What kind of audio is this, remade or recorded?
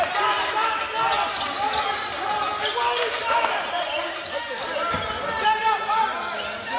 recorded